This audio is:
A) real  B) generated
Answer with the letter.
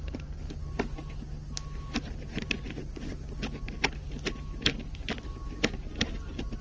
A